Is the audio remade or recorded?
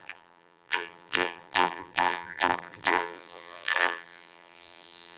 remade